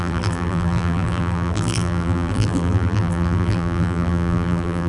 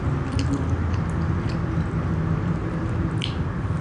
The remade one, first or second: first